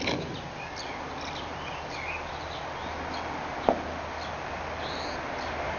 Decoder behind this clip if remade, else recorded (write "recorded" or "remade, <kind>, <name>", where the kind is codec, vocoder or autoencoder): recorded